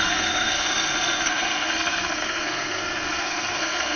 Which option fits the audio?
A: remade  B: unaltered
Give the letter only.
A